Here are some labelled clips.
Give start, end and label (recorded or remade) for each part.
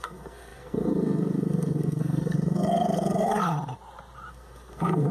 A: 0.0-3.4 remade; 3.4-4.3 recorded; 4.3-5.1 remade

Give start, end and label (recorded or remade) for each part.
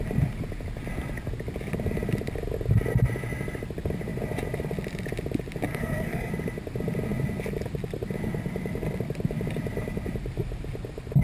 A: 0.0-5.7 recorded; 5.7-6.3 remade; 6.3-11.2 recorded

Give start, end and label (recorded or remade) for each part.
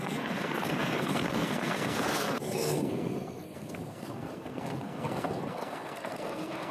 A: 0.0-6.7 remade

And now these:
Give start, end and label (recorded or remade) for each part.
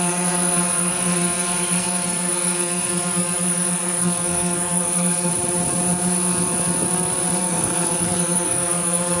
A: 0.0-5.3 remade; 5.3-7.4 recorded; 7.4-9.2 remade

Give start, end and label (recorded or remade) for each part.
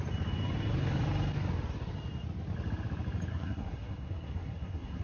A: 0.0-3.3 recorded; 3.3-5.0 remade